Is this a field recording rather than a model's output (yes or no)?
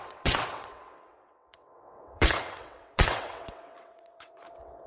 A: no